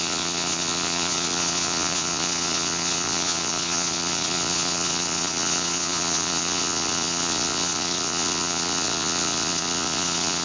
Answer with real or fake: fake